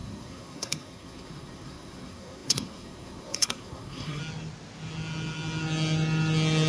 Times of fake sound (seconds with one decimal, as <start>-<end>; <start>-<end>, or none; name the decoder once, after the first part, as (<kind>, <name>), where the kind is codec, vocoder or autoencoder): 0.0-4.2 (codec, SNAC)